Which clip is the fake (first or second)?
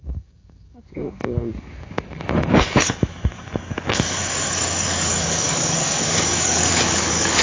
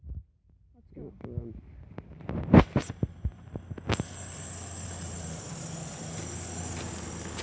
first